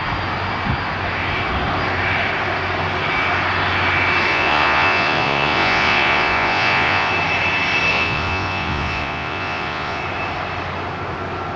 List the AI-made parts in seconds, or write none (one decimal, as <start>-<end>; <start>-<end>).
4.3-7.1; 7.9-10.0